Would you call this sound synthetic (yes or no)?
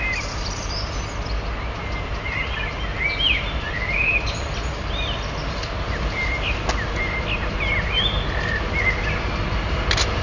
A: no